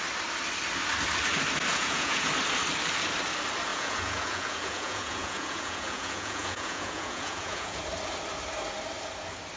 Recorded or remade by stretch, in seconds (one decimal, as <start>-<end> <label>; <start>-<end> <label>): 0.0-1.7 recorded; 1.7-2.3 remade; 2.3-3.7 recorded; 3.7-7.8 remade; 7.8-9.6 recorded